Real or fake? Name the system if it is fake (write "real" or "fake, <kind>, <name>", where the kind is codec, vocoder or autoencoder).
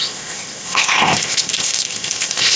fake, codec, ZipCodec